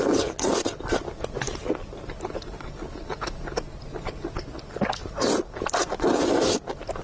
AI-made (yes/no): no